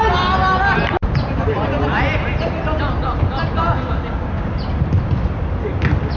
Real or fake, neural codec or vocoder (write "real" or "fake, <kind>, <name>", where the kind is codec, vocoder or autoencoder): real